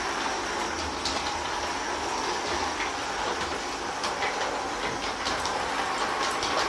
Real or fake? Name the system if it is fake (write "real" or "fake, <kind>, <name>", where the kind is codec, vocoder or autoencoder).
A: real